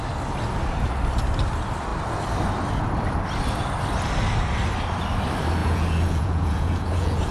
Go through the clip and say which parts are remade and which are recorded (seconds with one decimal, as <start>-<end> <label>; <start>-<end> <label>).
0.0-5.6 recorded; 5.6-7.3 remade